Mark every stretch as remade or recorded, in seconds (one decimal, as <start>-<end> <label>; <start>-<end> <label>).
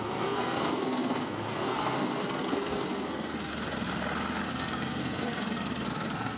0.0-3.5 remade; 3.5-4.5 recorded; 4.5-6.4 remade